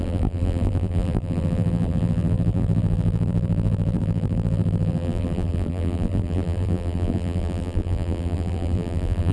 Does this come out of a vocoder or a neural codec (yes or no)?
yes